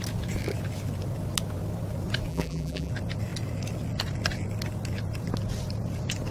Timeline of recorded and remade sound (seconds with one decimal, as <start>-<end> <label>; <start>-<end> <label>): 0.0-2.3 recorded; 2.3-2.9 remade; 2.9-6.3 recorded